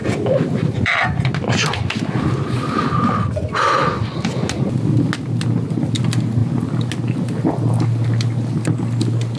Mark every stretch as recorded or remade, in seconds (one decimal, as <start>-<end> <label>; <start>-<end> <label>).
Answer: 0.0-1.6 remade; 1.6-9.4 recorded